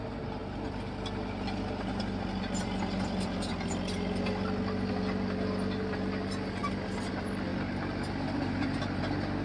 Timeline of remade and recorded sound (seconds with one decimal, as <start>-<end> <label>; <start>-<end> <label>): 0.0-9.4 recorded